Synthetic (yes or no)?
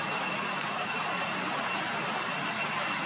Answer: no